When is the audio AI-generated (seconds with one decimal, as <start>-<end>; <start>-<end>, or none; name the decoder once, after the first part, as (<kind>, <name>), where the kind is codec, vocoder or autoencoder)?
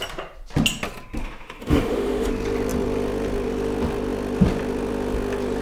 1.2-2.3 (autoencoder, DAC-VAE)